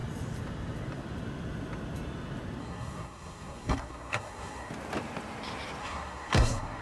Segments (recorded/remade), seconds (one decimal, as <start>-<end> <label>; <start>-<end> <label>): 0.0-2.6 recorded; 2.6-4.7 remade; 4.7-5.8 recorded; 5.8-6.8 remade